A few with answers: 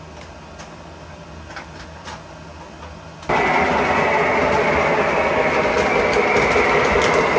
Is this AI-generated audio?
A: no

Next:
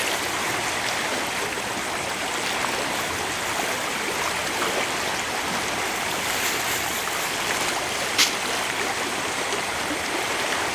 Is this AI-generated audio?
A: no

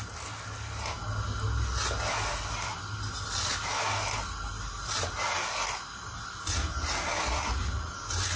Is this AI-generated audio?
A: no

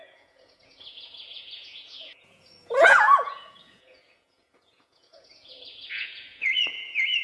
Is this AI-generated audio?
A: yes